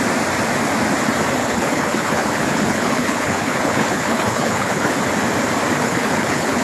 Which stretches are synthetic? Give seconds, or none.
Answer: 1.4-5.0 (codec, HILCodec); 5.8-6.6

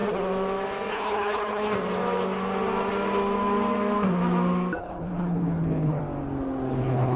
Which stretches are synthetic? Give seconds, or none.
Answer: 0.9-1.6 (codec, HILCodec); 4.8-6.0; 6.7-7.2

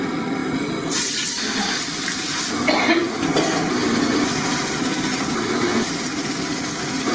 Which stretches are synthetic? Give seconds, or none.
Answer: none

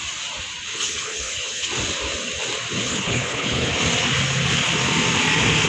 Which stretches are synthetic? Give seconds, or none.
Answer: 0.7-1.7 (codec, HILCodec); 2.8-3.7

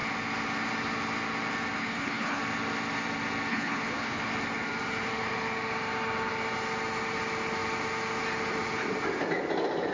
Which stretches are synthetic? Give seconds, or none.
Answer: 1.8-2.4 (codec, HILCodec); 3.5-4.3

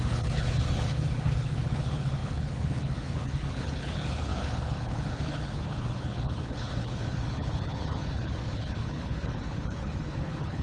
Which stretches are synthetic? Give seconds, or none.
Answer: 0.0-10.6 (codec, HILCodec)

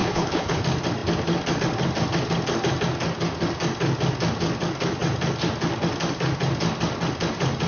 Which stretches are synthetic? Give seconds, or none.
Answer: 0.0-0.6 (codec, HILCodec)